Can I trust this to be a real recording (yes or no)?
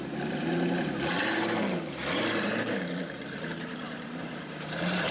no